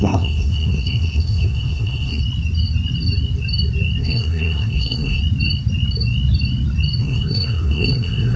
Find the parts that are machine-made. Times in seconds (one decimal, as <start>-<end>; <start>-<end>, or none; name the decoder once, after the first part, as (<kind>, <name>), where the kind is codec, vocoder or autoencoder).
0.0-2.2 (codec, SNAC); 4.0-5.2; 7.0-8.4